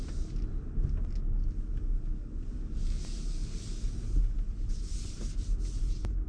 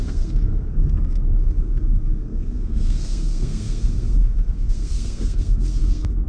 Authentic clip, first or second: first